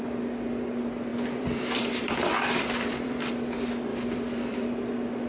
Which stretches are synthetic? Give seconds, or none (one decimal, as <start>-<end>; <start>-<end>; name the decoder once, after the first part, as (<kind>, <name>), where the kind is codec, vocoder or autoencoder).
1.1-3.3 (vocoder, BigVGAN v2); 3.9-4.7